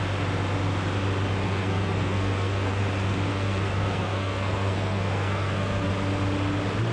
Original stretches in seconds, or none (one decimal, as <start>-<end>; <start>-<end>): 0.0-1.4; 2.8-3.3; 5.9-6.9